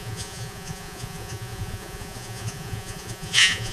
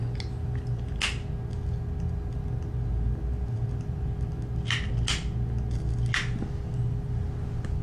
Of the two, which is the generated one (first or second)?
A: first